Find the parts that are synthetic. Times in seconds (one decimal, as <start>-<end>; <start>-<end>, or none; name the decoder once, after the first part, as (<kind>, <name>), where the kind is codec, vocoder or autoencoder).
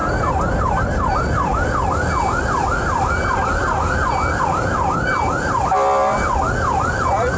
none